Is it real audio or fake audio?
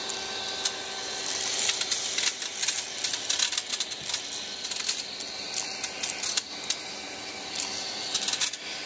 real